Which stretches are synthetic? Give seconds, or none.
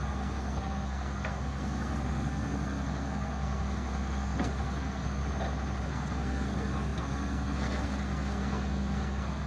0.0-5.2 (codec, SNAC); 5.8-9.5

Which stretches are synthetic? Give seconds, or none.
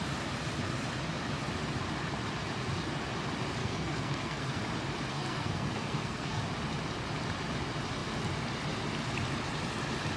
3.6-4.6 (codec, SNAC); 5.1-6.4